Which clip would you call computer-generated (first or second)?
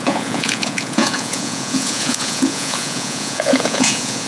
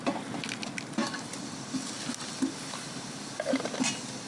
first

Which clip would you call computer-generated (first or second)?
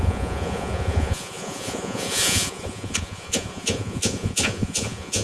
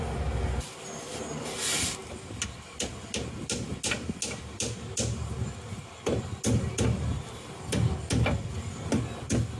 first